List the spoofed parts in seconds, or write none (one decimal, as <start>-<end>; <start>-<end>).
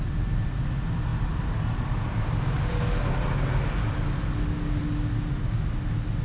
none